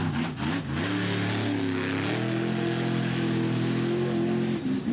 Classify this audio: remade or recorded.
recorded